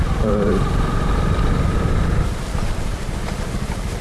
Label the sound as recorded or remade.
remade